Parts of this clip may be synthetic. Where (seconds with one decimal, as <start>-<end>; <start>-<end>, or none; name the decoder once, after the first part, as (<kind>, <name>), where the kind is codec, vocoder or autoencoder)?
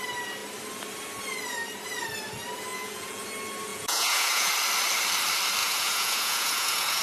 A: 2.7-3.2 (vocoder, Vocos); 3.7-4.5; 5.6-7.0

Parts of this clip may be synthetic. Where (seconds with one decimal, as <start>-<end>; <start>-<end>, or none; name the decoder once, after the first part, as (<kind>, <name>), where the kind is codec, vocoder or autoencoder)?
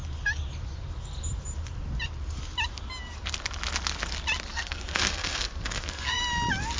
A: 4.5-6.2 (codec, SNAC)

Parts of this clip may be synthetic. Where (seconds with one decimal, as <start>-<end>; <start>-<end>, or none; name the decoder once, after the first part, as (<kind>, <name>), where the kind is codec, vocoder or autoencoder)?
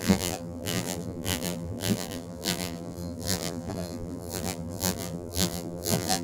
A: 0.0-6.2 (vocoder, BigVGAN v2)